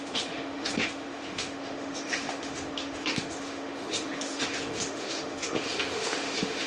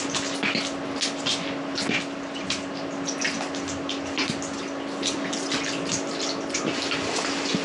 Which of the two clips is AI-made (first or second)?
first